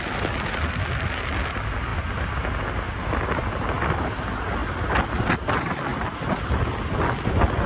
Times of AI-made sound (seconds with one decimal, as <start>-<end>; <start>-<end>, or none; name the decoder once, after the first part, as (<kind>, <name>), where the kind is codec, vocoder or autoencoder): none